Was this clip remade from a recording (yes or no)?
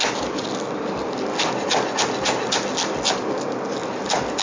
no